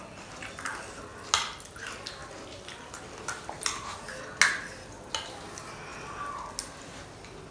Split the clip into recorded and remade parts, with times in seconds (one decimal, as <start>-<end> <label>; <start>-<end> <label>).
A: 0.0-7.5 recorded